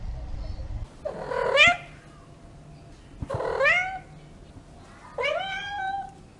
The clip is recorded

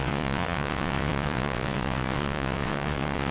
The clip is remade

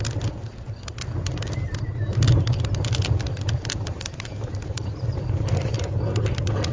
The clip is recorded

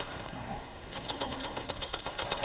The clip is remade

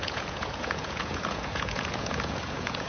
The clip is remade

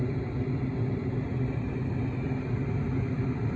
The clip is recorded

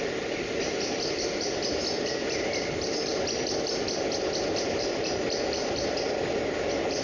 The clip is recorded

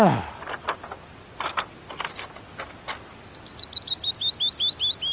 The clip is recorded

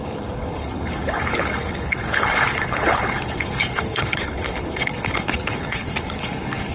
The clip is remade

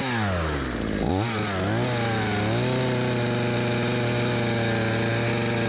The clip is recorded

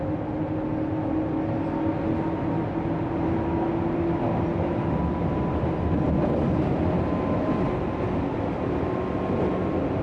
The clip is recorded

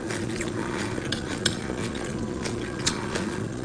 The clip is remade